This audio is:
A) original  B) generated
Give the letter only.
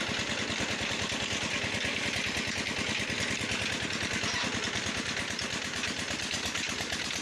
A